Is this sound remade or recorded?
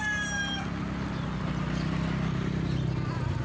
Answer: recorded